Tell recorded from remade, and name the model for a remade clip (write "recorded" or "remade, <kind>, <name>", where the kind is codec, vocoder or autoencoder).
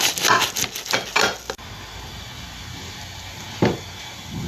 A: recorded